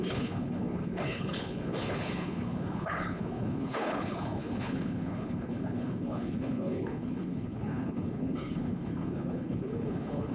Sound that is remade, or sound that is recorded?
remade